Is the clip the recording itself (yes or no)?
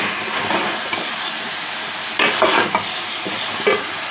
yes